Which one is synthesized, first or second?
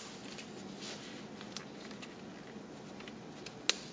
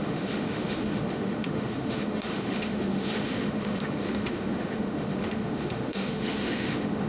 second